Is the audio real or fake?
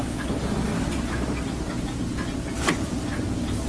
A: real